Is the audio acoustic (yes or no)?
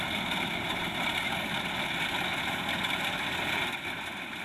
yes